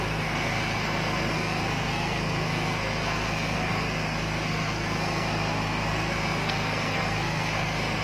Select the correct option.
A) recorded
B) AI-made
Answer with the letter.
B